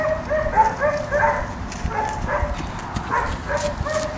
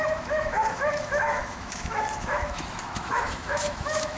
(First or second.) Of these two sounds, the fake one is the second